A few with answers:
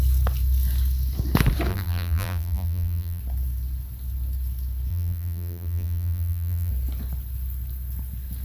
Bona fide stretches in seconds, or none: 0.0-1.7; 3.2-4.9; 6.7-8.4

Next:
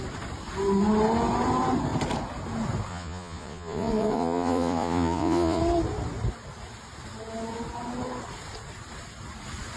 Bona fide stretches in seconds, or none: 0.0-2.9; 5.6-9.8

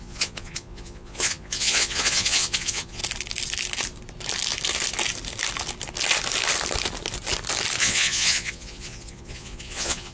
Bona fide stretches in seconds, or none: 3.0-7.8